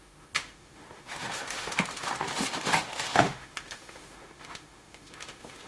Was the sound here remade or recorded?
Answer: remade